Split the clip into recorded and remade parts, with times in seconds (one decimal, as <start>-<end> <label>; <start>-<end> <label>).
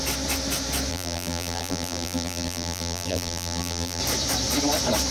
0.0-0.9 recorded; 0.9-4.0 remade; 4.0-5.1 recorded